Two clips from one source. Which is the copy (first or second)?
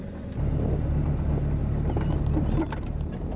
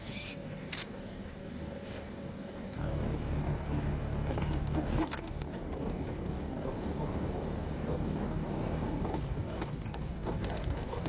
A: second